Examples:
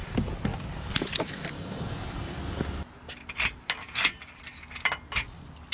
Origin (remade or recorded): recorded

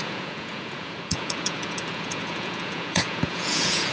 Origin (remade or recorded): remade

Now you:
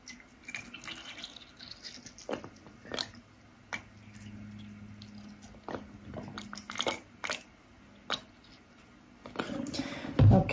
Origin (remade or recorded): recorded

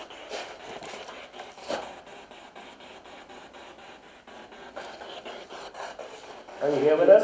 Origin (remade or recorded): recorded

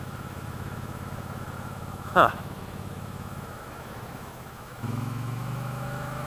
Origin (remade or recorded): remade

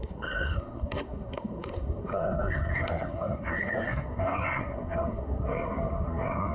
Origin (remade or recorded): remade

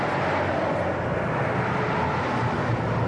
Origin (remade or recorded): recorded